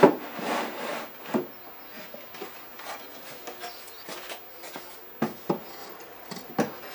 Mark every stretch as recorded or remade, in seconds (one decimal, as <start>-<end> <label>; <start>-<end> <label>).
0.0-5.8 recorded; 5.8-6.5 remade; 6.5-6.9 recorded